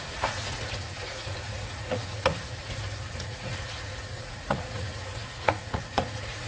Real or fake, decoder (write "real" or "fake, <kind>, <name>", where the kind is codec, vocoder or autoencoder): fake, vocoder, Vocos